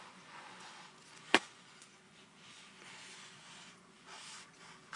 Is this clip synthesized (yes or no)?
yes